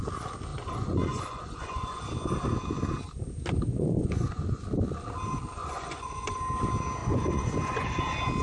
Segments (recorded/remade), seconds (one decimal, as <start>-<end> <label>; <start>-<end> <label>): 0.0-0.5 recorded; 0.5-2.0 remade; 2.0-3.7 recorded; 3.7-4.6 remade; 4.6-5.6 recorded; 5.6-6.4 remade; 6.4-7.0 recorded; 7.0-8.0 remade; 8.0-8.4 recorded